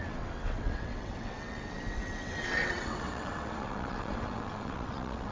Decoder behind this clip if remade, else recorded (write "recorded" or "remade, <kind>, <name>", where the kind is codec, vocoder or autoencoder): remade, vocoder, WaveNeXt